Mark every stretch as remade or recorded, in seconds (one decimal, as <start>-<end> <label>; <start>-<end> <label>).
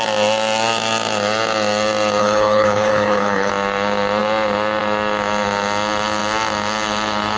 0.0-2.2 recorded; 2.2-3.5 remade; 3.5-7.4 recorded